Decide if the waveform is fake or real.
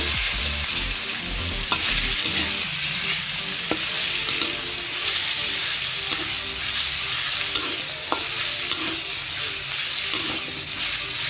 real